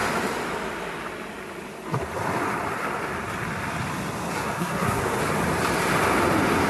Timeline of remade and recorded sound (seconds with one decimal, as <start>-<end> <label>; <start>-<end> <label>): 0.0-4.3 recorded; 4.3-5.0 remade; 5.0-6.7 recorded